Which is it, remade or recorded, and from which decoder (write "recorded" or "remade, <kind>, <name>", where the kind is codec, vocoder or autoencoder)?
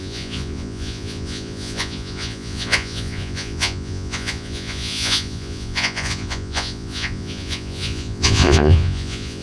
remade, vocoder, Vocos